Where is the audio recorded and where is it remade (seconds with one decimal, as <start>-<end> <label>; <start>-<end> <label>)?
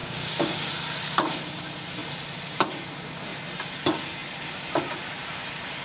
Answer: 0.0-0.7 remade; 0.7-5.8 recorded